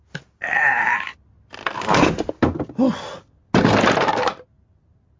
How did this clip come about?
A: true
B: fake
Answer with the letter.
A